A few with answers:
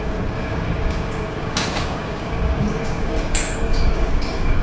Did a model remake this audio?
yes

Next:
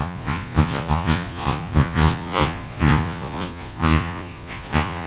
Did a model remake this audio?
yes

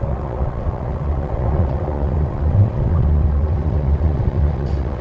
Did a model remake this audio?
yes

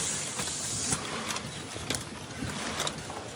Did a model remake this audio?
no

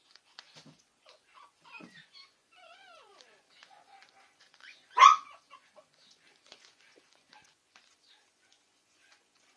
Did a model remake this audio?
yes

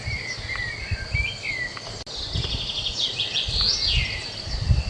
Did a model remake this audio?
no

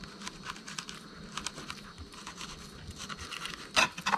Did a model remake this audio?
no